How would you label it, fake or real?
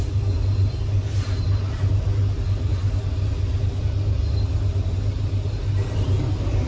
real